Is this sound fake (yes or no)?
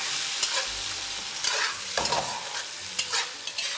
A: no